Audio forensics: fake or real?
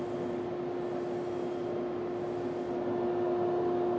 real